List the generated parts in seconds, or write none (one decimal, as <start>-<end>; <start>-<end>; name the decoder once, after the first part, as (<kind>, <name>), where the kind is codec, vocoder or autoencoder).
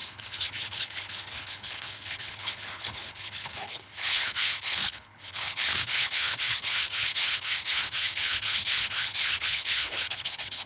0.0-10.7 (codec, HILCodec)